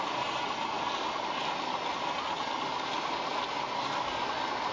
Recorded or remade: recorded